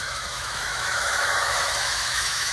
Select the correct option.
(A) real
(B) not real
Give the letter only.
B